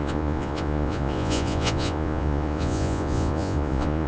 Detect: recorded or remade remade